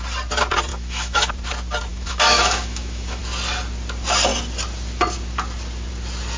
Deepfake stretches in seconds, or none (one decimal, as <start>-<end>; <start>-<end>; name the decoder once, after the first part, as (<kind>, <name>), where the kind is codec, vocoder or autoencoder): 0.7-1.3 (autoencoder, DAC-VAE); 1.9-3.2